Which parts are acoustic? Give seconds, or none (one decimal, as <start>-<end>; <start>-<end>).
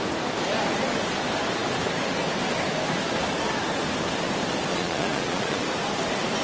0.0-4.7; 5.6-6.4